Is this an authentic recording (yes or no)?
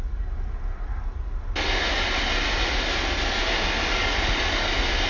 yes